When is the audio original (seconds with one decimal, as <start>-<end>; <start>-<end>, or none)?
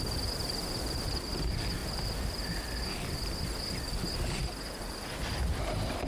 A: 0.0-6.1